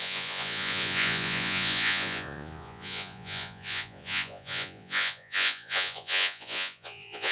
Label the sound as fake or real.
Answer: fake